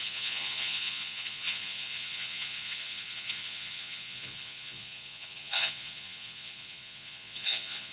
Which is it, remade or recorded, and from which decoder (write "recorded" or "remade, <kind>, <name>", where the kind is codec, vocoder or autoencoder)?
remade, vocoder, Vocos